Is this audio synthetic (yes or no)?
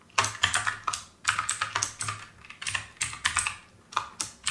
no